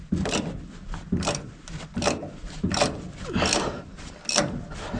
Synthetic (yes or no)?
no